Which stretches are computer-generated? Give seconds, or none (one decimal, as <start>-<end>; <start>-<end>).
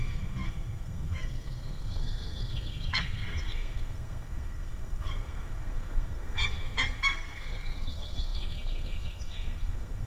0.0-10.1